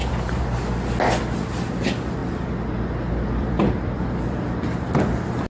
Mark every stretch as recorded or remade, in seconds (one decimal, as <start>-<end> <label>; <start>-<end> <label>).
0.0-2.2 recorded; 2.2-5.5 remade